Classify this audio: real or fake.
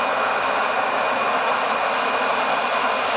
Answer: real